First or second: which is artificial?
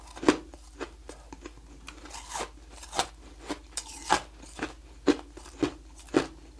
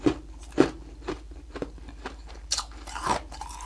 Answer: second